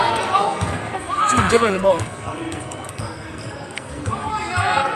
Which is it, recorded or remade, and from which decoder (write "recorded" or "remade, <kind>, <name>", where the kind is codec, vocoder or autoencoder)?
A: remade, codec, SNAC